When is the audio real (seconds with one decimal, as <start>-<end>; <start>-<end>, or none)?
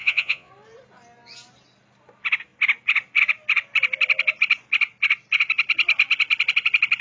0.5-7.0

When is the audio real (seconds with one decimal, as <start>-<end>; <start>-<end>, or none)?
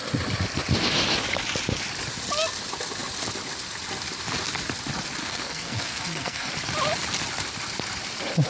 0.0-5.2; 6.5-8.5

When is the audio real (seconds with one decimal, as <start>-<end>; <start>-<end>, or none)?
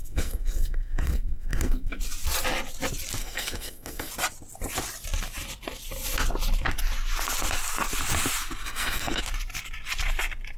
2.0-3.2; 4.1-8.6; 9.2-10.6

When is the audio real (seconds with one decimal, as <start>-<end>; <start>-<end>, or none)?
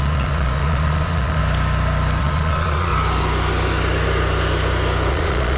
1.4-2.2; 2.9-5.1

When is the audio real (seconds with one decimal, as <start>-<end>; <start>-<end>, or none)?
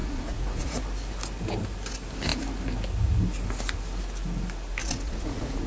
0.8-4.8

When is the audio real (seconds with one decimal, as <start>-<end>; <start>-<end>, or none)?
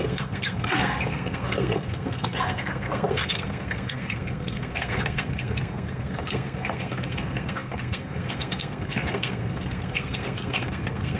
none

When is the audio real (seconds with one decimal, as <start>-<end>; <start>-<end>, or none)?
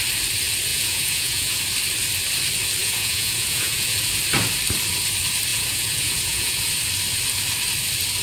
0.0-0.7; 1.6-2.8; 4.0-5.5; 6.7-8.2